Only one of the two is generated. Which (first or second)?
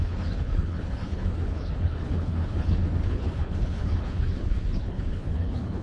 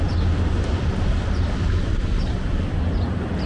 first